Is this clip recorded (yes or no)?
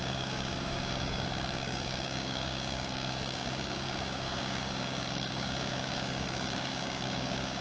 no